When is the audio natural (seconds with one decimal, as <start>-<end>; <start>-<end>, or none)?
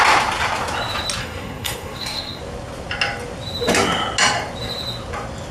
0.0-1.2; 2.4-5.5